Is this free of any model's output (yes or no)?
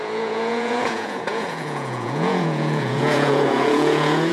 no